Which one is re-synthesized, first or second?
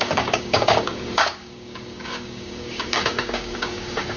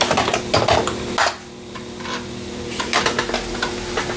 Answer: first